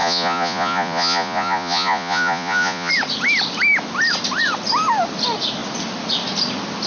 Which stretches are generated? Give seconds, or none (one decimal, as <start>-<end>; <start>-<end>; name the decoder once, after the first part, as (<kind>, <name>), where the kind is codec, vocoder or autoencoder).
0.0-2.9 (vocoder, Vocos)